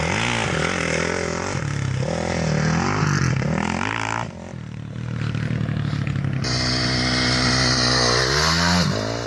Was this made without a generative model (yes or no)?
yes